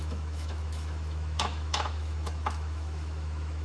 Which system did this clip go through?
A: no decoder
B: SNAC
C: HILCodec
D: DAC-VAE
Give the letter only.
D